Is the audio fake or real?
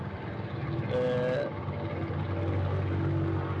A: real